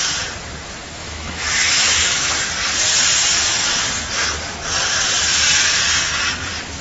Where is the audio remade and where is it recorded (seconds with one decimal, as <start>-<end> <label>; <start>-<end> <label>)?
0.0-1.0 recorded; 1.0-2.3 remade; 2.3-6.8 recorded